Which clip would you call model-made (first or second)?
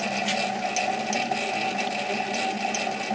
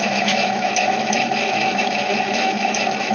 second